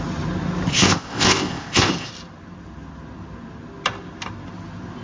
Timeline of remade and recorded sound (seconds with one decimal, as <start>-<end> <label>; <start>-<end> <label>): 0.0-0.7 recorded; 0.7-2.1 remade; 2.1-5.0 recorded